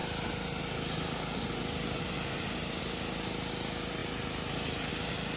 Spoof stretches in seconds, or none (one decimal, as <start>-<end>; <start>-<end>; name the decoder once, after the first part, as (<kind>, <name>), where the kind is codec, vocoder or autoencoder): none